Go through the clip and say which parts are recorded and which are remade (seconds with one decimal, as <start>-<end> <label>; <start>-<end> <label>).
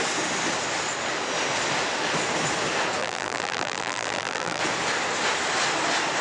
0.0-3.0 recorded; 3.0-4.6 remade; 4.6-6.2 recorded